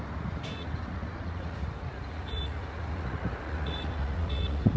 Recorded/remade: remade